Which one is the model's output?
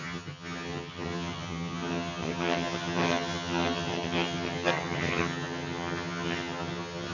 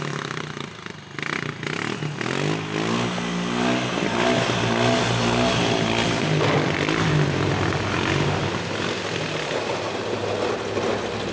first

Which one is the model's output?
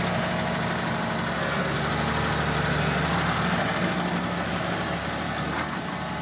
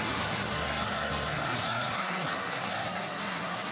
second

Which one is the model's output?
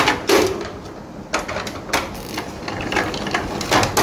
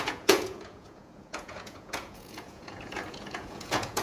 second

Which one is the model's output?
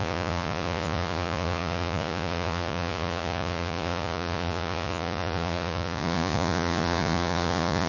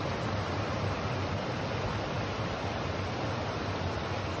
first